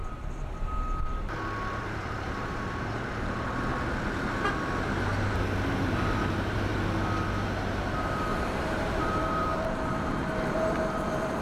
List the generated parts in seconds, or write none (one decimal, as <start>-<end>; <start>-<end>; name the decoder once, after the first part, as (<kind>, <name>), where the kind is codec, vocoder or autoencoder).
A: 1.8-3.7 (vocoder, BigVGAN v2); 6.2-6.7; 8.2-11.4

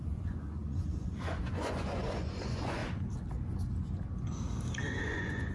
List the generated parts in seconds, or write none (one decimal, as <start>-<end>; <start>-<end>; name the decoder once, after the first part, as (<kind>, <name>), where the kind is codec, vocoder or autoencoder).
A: 0.0-2.8 (vocoder, Vocos); 5.0-5.5

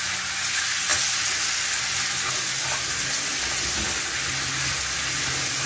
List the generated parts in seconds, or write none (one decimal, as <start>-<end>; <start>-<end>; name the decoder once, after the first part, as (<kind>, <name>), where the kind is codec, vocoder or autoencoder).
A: none

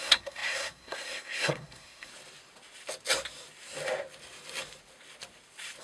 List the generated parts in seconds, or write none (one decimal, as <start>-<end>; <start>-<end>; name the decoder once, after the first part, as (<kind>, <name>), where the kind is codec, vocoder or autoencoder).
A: 0.0-2.1 (codec, SNAC)

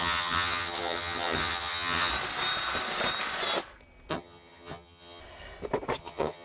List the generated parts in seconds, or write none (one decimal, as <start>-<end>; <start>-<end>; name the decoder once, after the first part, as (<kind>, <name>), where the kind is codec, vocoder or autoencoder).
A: 0.0-2.1 (vocoder, HiFi-GAN); 4.1-5.2; 6.0-6.4

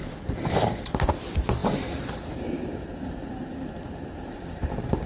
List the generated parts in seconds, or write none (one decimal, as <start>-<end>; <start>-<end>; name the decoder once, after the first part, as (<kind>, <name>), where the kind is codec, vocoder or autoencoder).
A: 0.0-0.8 (vocoder, BigVGAN v2); 1.6-5.1